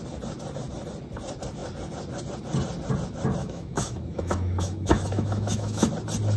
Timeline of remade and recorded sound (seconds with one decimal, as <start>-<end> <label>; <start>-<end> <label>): 0.0-3.4 recorded; 3.4-5.9 remade; 5.9-6.4 recorded

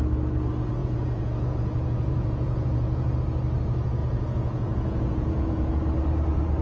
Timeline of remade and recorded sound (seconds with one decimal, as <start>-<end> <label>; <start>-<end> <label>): 0.0-0.8 recorded; 0.8-3.2 remade; 3.2-4.0 recorded; 4.0-5.7 remade; 5.7-6.6 recorded

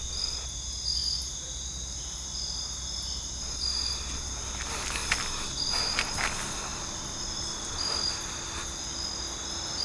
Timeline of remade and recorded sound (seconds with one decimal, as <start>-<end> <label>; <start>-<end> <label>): 0.0-6.7 recorded; 6.7-8.8 remade; 8.8-9.8 recorded

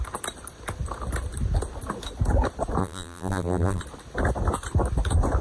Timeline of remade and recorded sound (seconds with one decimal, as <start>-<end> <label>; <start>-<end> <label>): 0.0-2.8 recorded; 2.8-3.8 remade; 3.8-5.4 recorded

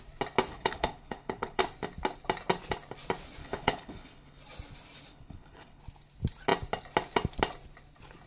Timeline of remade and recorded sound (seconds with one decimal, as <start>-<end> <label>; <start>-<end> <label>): 0.0-0.5 recorded; 0.5-1.6 remade; 1.6-3.4 recorded; 3.4-4.4 remade; 4.4-5.1 recorded; 5.1-5.8 remade; 5.8-8.3 recorded

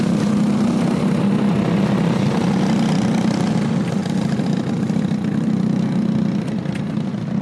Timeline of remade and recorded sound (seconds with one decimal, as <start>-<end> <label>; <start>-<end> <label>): 0.0-7.4 recorded

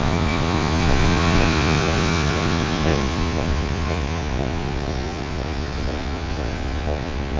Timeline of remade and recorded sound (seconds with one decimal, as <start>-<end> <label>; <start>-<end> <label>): 0.0-7.4 remade

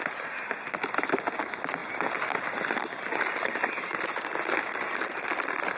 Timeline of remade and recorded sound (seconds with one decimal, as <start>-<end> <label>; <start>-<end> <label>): 0.0-5.8 recorded